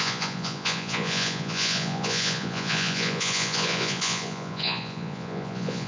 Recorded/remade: remade